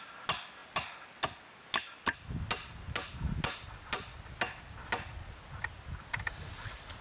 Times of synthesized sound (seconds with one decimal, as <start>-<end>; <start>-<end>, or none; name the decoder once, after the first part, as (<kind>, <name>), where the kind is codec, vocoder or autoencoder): none

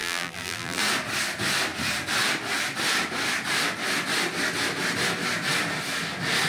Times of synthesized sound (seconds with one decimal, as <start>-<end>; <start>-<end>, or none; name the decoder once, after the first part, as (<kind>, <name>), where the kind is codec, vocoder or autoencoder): 0.0-0.8 (vocoder, BigVGAN v2)

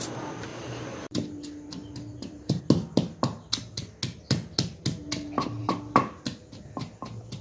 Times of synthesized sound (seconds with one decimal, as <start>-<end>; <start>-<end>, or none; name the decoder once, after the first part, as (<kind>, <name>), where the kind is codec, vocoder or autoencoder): 0.5-2.6 (vocoder, BigVGAN v2)

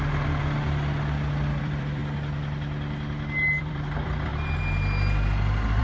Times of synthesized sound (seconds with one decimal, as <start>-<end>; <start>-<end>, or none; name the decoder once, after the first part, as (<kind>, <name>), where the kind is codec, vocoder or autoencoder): 0.0-0.4 (vocoder, BigVGAN v2); 1.6-2.0; 3.6-4.3

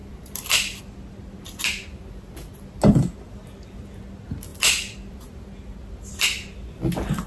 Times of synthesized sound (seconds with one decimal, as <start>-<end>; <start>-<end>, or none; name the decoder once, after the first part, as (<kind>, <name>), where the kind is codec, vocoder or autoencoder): 0.0-0.8 (vocoder, BigVGAN v2)

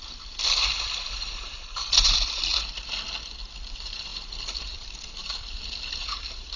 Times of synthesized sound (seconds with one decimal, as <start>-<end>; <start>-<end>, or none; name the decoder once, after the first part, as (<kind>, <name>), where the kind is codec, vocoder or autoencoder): 0.0-2.5 (vocoder, BigVGAN v2); 3.5-4.1; 4.6-6.6

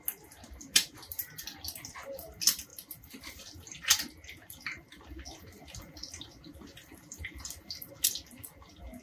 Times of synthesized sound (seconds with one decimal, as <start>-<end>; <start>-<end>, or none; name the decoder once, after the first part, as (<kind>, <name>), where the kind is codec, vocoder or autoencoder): none

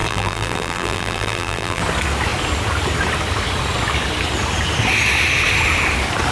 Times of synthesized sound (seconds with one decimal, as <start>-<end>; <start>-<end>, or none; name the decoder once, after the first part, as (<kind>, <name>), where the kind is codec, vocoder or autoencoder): 0.0-1.8 (vocoder, BigVGAN v2)